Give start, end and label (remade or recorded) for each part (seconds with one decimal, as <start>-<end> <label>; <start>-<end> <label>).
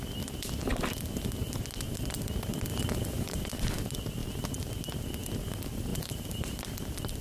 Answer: 0.0-2.7 recorded; 2.7-3.5 remade; 3.5-5.9 recorded; 5.9-6.6 remade; 6.6-7.2 recorded